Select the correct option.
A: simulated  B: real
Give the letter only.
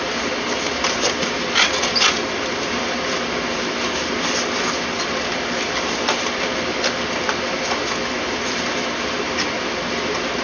B